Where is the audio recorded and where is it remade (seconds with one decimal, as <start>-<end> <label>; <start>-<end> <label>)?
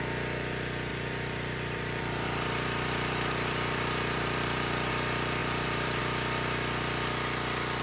0.0-0.9 recorded; 0.9-4.9 remade; 4.9-5.4 recorded; 5.4-6.0 remade; 6.0-7.8 recorded